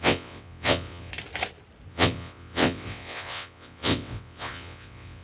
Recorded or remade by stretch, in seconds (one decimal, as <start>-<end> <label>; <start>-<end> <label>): 0.0-1.1 remade; 1.1-1.9 recorded; 1.9-5.2 remade